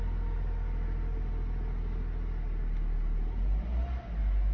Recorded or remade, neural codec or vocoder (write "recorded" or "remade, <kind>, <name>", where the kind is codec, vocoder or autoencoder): recorded